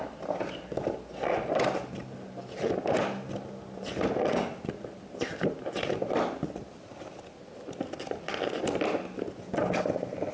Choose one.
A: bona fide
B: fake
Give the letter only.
A